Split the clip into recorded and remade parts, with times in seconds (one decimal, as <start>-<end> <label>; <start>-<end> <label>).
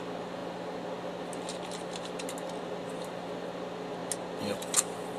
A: 0.0-5.2 recorded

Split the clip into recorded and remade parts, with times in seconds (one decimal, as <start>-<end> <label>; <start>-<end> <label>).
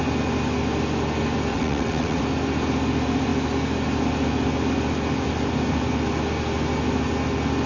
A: 0.0-1.5 recorded; 1.5-2.2 remade; 2.2-7.7 recorded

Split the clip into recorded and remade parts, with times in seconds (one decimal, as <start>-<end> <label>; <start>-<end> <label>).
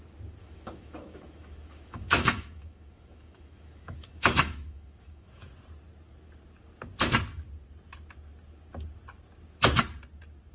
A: 0.0-0.4 recorded; 0.4-5.5 remade; 5.5-10.5 recorded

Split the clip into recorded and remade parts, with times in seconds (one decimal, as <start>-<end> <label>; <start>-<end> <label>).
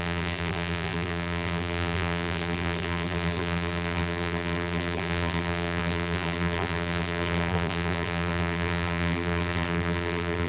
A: 0.0-10.5 remade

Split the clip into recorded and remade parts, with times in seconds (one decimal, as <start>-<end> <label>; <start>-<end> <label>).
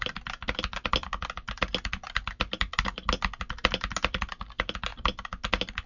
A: 0.0-5.9 recorded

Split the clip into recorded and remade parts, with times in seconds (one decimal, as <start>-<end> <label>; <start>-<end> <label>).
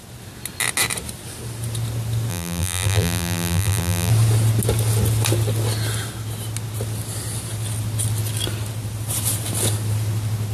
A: 0.0-2.3 recorded; 2.3-4.1 remade; 4.1-10.5 recorded